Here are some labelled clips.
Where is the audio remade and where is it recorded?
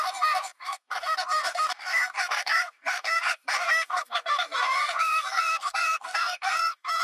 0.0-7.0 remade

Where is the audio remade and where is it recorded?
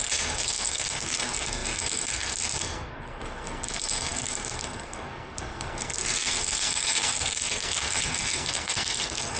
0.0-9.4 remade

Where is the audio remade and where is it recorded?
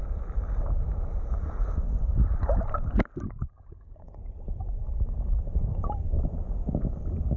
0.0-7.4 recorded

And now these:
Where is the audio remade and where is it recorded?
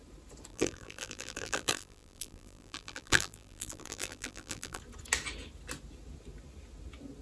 0.0-0.5 recorded; 0.5-4.8 remade; 4.8-7.2 recorded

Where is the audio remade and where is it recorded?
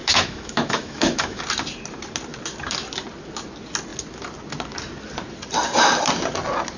0.0-1.4 remade; 1.4-6.8 recorded